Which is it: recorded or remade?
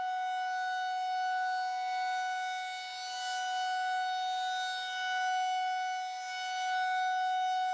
recorded